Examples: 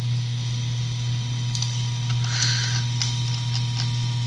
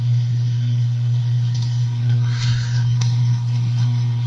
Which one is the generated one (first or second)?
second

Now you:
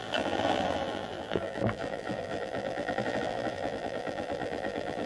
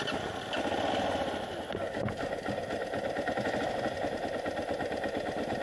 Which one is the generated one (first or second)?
first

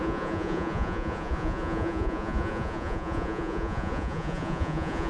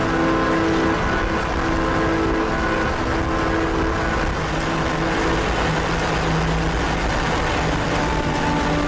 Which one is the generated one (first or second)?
first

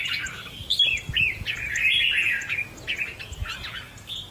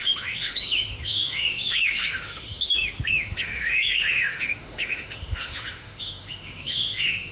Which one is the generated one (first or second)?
second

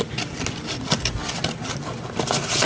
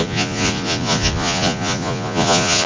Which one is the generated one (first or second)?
second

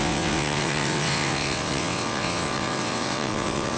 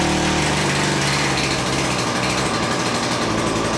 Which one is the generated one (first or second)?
first